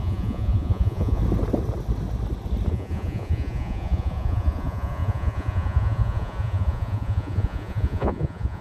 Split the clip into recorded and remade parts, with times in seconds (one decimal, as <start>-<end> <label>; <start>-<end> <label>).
0.0-1.2 remade; 1.2-2.7 recorded; 2.7-8.6 remade